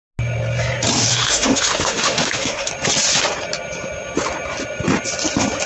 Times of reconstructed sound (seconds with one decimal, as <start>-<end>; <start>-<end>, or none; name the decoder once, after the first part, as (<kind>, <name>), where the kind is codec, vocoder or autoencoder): 1.1-2.7 (autoencoder, DAC-VAE)